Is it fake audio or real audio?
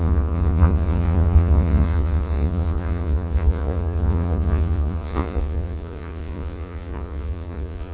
fake